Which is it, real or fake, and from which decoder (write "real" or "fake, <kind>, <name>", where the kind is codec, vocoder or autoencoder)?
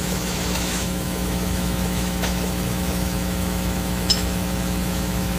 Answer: fake, autoencoder, DAC-VAE